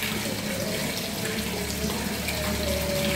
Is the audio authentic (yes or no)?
yes